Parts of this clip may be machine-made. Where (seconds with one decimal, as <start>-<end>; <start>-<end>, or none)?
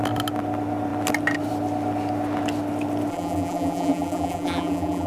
3.1-5.1